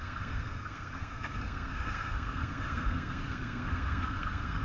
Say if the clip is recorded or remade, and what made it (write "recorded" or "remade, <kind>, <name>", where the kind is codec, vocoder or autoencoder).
remade, codec, SNAC